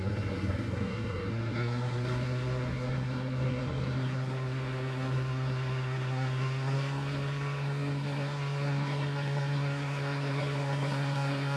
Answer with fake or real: fake